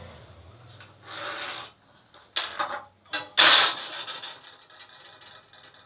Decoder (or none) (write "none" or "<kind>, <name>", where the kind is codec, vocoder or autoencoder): none